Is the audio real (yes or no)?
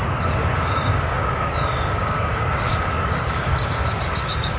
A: no